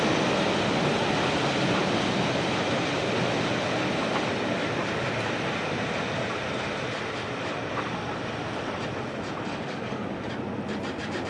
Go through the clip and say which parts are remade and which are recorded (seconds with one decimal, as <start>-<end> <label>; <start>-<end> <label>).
0.0-9.5 recorded; 9.5-10.3 remade; 10.3-11.3 recorded